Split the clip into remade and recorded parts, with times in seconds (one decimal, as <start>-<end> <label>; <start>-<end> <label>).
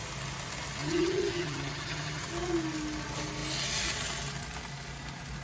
0.0-0.8 recorded; 0.8-2.3 remade; 2.3-5.4 recorded